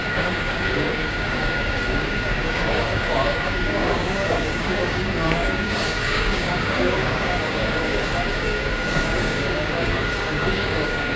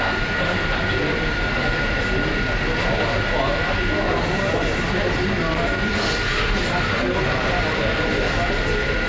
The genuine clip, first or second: second